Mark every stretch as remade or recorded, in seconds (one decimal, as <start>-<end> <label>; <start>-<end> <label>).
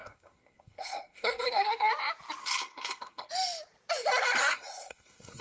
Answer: 0.0-1.9 remade; 1.9-2.4 recorded; 2.4-3.3 remade; 3.3-4.4 recorded; 4.4-5.4 remade